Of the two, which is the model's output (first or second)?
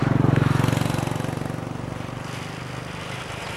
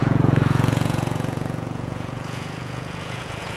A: second